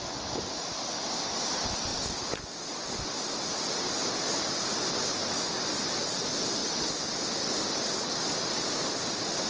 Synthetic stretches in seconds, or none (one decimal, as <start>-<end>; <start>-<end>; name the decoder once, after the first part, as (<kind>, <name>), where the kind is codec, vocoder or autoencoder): none